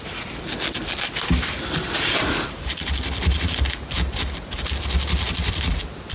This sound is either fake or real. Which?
real